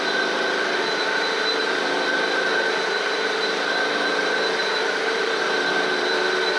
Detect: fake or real fake